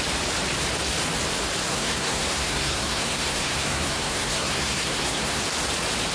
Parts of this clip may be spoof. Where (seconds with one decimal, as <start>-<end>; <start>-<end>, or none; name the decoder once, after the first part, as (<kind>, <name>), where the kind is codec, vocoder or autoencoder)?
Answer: 1.7-5.4 (codec, SNAC)